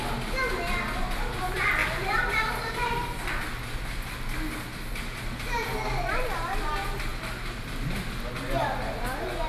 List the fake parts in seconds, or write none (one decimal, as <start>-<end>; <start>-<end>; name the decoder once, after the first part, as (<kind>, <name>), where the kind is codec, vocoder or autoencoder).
none